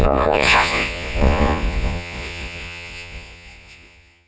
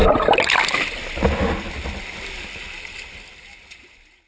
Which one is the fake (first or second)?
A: first